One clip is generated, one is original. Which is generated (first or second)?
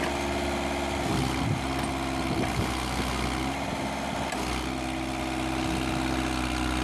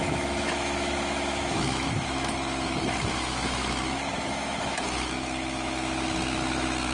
second